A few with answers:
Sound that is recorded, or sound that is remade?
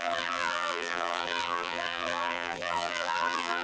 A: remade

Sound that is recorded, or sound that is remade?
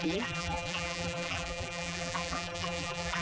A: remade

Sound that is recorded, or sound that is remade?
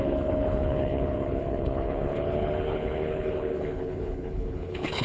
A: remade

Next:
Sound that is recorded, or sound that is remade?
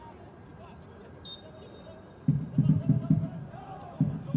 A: recorded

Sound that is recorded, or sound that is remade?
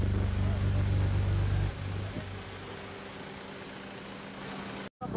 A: recorded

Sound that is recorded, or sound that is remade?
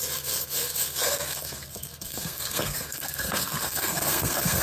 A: remade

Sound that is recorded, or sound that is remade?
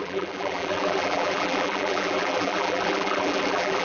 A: remade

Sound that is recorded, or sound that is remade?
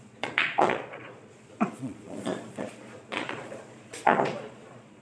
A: remade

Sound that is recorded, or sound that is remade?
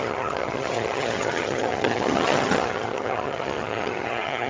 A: remade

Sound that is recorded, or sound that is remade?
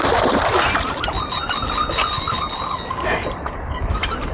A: recorded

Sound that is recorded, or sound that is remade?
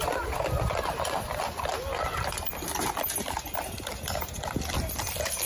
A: recorded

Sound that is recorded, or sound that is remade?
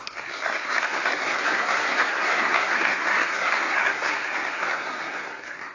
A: remade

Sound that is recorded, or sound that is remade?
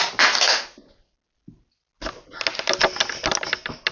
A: recorded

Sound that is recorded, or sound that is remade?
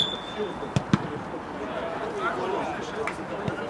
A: recorded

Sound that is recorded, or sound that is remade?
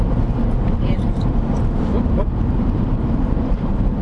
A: remade